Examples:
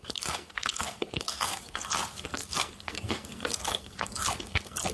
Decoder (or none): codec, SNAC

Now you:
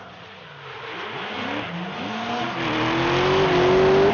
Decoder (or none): none